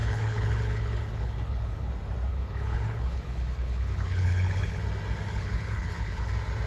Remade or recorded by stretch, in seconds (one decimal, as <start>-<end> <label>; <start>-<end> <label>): 0.0-1.9 remade; 1.9-2.3 recorded; 2.3-4.8 remade; 4.8-5.3 recorded; 5.3-6.3 remade; 6.3-6.7 recorded